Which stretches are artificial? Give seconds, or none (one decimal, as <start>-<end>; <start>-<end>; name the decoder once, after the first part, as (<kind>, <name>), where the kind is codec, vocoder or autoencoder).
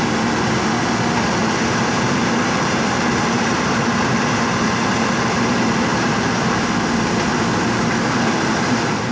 1.4-5.2 (vocoder, BigVGAN v2); 5.9-6.7